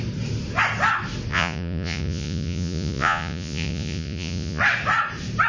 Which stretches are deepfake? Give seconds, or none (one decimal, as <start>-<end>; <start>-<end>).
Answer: 1.3-4.6